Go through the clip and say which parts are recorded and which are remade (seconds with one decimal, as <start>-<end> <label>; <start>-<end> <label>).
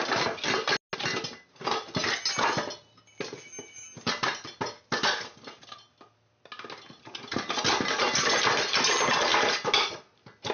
0.0-10.5 recorded